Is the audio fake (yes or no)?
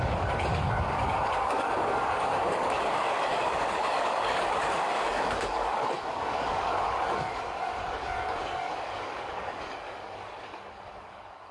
yes